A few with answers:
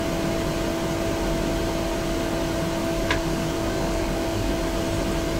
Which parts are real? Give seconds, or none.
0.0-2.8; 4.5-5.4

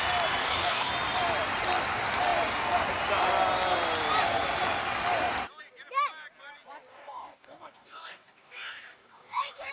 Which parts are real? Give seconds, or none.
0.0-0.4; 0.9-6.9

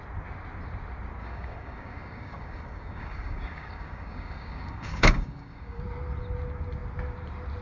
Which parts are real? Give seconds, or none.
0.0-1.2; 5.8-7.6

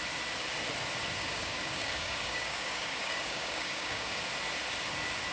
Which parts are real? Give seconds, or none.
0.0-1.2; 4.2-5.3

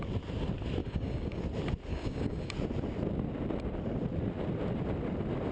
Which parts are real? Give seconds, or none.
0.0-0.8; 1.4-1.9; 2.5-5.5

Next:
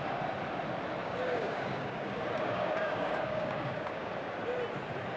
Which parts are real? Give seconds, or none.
0.0-1.0; 4.1-5.2

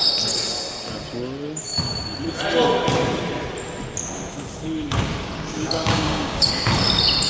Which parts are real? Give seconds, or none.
0.0-4.3; 6.5-7.3

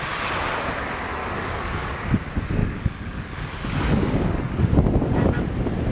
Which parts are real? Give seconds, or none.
0.0-1.2; 2.2-2.6; 5.4-5.9